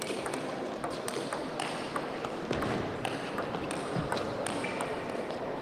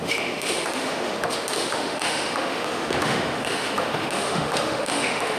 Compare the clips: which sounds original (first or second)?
first